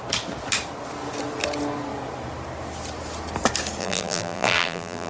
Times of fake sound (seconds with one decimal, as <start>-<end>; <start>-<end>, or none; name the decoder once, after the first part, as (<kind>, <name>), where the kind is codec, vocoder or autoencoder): 3.8-5.1 (vocoder, BigVGAN v2)